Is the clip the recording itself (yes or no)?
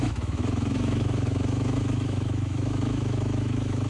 no